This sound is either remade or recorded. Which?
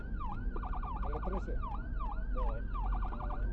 recorded